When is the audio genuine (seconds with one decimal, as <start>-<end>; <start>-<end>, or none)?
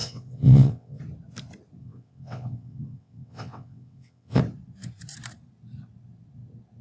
1.0-1.8; 4.4-6.8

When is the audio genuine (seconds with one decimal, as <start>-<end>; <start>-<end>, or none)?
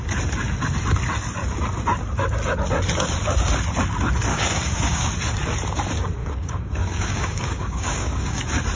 0.0-4.3; 5.1-6.2; 8.4-8.8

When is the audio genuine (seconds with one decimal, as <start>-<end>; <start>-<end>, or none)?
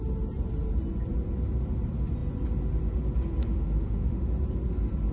0.0-3.4; 4.3-5.1